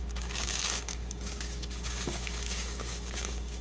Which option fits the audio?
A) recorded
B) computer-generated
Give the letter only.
B